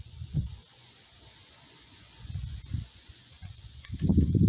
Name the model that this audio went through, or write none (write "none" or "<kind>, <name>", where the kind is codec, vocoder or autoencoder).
vocoder, Vocos